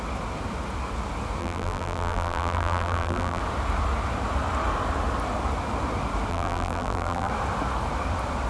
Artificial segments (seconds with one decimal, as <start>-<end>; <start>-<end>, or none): 1.4-3.4; 6.3-7.3